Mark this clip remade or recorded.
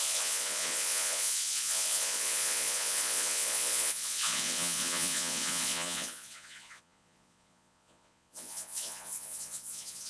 remade